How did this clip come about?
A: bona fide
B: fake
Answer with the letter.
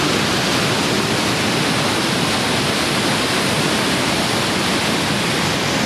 A